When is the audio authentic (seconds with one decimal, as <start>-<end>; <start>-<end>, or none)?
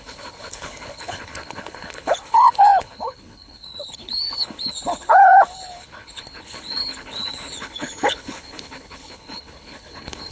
none